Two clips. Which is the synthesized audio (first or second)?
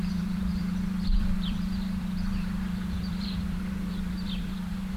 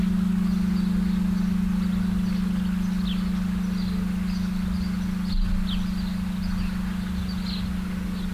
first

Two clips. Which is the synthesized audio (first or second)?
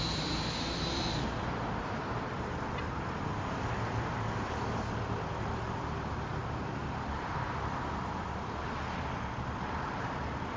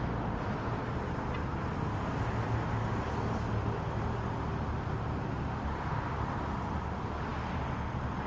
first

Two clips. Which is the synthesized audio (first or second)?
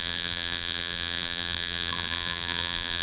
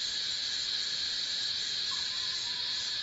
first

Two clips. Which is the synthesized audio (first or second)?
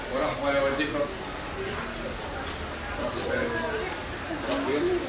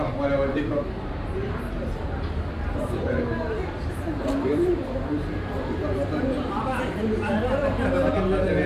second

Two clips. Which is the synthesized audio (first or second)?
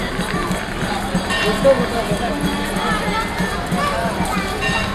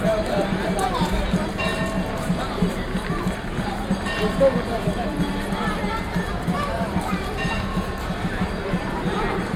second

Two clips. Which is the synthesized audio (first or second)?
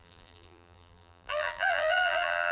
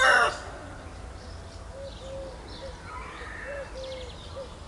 first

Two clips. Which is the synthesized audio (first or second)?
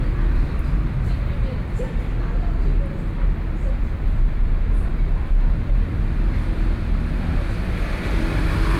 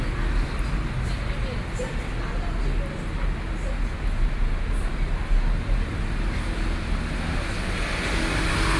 first